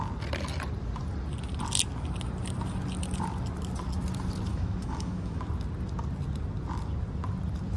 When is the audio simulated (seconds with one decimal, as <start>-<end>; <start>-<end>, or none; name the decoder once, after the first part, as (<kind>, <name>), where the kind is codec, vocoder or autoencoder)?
4.5-5.4 (autoencoder, DAC-VAE)